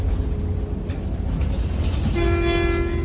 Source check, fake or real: real